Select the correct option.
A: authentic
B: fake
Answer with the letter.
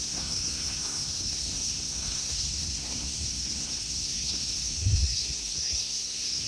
B